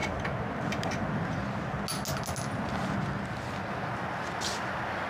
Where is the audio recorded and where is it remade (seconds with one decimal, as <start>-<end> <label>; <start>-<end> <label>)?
0.0-5.1 recorded